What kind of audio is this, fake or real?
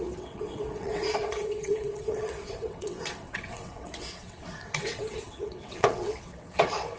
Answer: fake